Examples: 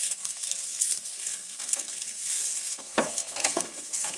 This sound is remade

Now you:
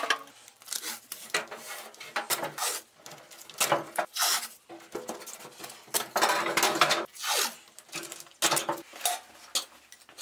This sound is recorded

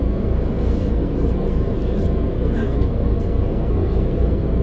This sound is remade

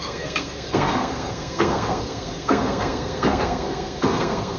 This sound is remade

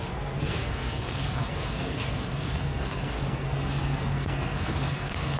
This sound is remade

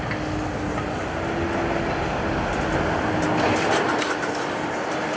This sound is recorded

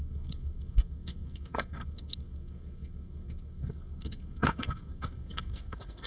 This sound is remade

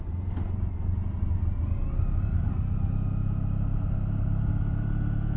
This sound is recorded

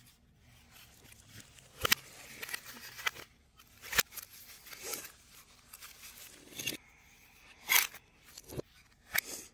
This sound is recorded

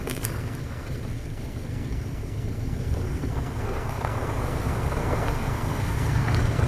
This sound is remade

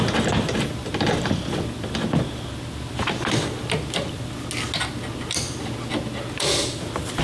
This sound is recorded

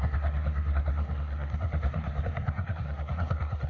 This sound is remade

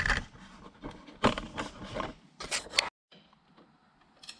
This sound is recorded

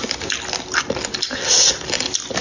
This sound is recorded